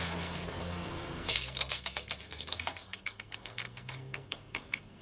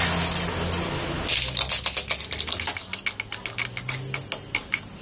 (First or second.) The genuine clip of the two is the second